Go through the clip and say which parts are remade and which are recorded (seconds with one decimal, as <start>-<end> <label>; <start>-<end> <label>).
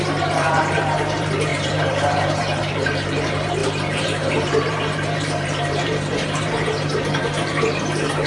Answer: 0.0-8.3 remade